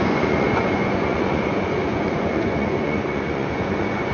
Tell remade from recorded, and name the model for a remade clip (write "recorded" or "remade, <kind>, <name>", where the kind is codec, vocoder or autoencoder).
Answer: remade, vocoder, Vocos